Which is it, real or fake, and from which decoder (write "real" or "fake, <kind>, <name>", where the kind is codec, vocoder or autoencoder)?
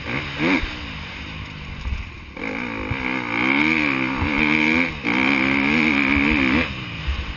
real